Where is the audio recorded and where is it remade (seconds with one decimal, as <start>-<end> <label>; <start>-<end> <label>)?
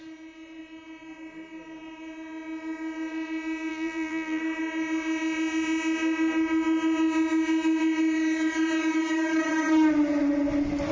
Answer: 0.0-3.7 recorded; 3.7-4.4 remade; 4.4-10.9 recorded